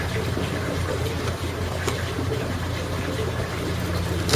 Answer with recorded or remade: recorded